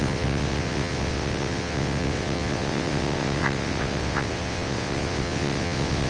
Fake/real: fake